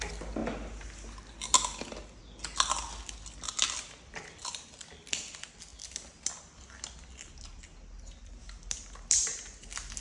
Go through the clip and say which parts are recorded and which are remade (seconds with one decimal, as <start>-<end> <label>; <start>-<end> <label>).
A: 0.0-10.0 recorded